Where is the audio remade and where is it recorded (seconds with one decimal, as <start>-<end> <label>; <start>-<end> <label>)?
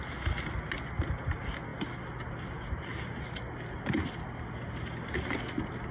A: 0.0-5.9 recorded